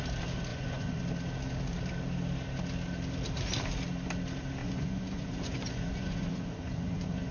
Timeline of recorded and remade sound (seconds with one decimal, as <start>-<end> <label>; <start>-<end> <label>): 0.0-0.5 recorded; 0.5-1.0 remade; 1.0-4.6 recorded; 4.6-7.3 remade